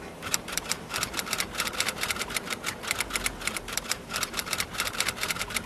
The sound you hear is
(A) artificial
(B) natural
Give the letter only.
A